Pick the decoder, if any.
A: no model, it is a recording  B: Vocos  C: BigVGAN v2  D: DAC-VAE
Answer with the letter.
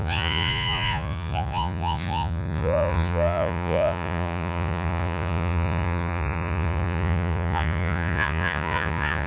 B